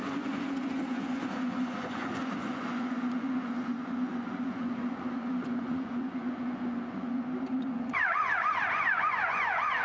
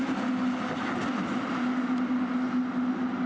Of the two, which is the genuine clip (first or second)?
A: second